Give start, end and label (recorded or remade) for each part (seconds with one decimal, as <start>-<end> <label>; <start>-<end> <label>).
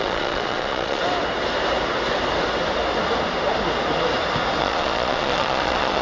0.0-1.0 remade; 1.0-4.6 recorded; 4.6-6.0 remade